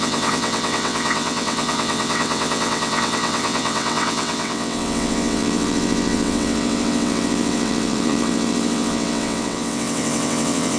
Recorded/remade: remade